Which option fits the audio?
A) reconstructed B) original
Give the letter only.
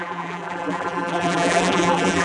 A